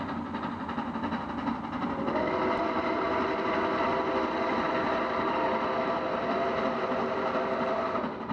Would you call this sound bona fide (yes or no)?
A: yes